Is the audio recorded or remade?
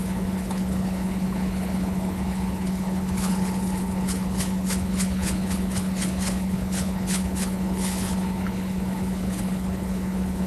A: remade